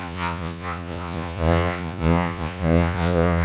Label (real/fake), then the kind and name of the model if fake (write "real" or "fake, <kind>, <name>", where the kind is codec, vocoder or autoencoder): fake, vocoder, Vocos